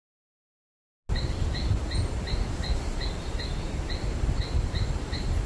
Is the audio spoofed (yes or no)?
no